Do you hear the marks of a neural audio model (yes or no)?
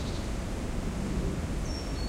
no